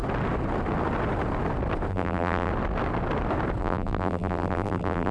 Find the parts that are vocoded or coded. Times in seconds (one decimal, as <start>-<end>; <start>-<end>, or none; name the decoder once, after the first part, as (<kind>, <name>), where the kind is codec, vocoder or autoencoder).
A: 1.9-2.5 (vocoder, BigVGAN v2); 3.6-5.1